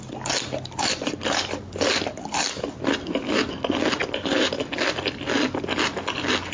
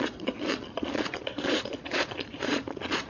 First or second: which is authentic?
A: first